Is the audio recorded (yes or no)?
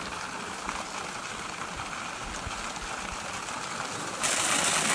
yes